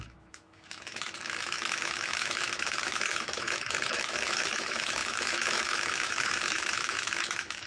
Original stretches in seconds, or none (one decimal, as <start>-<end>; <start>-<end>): none